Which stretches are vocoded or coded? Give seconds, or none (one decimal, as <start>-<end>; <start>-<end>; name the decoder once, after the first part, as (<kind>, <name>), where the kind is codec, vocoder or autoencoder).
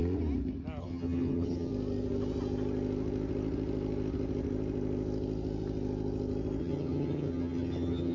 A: 0.8-1.7 (vocoder, HiFi-GAN); 6.6-8.1